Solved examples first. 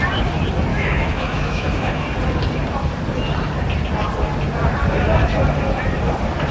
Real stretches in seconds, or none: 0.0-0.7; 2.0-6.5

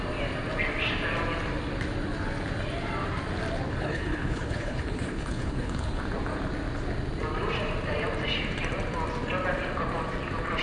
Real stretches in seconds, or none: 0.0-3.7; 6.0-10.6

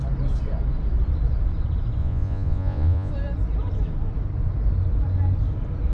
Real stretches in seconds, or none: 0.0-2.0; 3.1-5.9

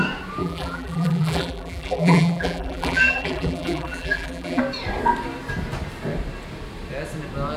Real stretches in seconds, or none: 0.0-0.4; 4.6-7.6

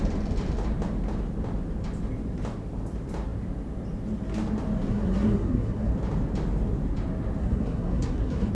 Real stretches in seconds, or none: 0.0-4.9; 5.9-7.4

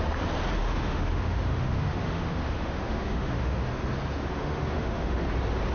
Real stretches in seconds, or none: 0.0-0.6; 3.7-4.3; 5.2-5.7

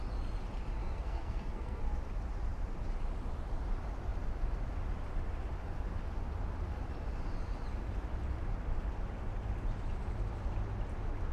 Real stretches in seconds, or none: 0.0-0.8; 1.8-11.3

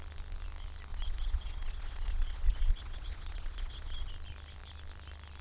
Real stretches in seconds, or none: 0.0-0.9; 4.1-5.4